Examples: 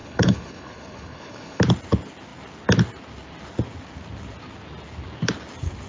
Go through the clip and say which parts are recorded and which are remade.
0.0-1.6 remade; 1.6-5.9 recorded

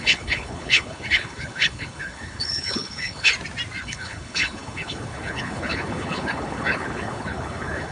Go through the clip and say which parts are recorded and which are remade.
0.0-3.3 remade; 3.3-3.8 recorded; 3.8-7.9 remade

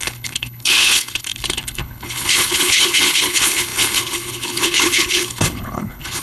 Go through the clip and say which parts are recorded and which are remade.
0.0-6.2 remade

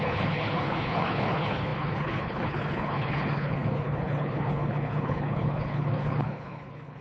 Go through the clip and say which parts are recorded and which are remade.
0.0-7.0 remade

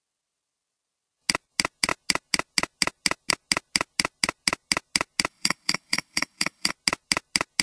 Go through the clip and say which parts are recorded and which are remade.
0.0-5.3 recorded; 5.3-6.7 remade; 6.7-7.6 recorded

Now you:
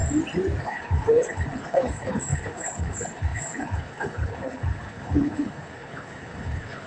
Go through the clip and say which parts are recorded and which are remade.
0.0-0.6 recorded; 0.6-6.9 remade

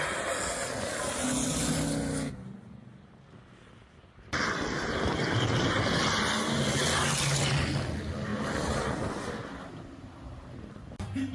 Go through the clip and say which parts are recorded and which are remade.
0.0-11.3 recorded